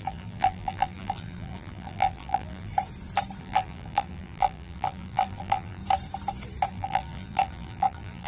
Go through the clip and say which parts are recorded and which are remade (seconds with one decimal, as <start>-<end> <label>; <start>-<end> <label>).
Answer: 0.0-2.7 remade; 2.7-3.4 recorded; 3.4-5.8 remade; 5.8-6.7 recorded; 6.7-8.3 remade